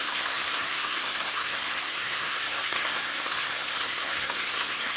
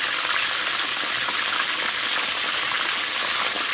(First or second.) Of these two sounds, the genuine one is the second